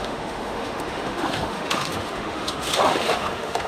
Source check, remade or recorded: remade